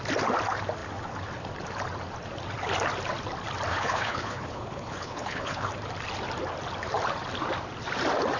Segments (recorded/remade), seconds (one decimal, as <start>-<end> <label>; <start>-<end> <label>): 0.0-3.7 recorded; 3.7-5.7 remade; 5.7-8.4 recorded